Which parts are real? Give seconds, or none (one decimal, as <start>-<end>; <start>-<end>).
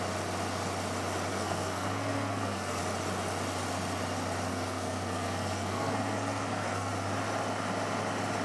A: 0.0-1.3; 2.8-4.5; 6.9-8.4